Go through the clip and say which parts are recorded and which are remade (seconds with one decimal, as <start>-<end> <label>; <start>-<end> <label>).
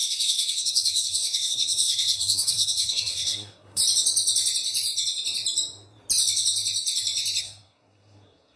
0.0-3.8 remade; 3.8-7.4 recorded; 7.4-8.6 remade